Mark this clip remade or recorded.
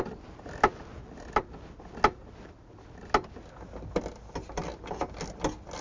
recorded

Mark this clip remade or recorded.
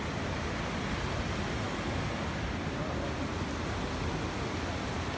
recorded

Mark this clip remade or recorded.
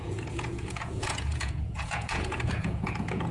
remade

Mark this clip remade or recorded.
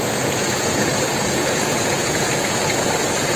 remade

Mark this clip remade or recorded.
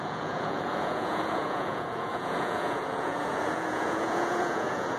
remade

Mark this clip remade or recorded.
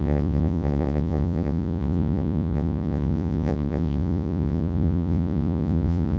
remade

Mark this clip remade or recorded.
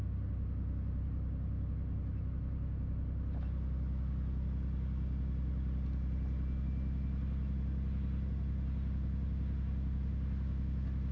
recorded